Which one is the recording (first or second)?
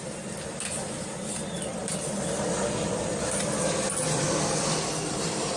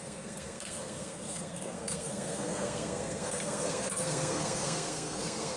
first